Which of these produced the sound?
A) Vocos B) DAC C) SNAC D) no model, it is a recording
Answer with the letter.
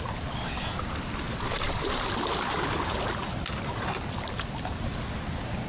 D